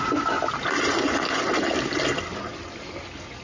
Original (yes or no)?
yes